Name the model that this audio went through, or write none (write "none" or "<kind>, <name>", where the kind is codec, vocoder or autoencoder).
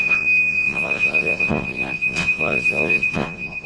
vocoder, Vocos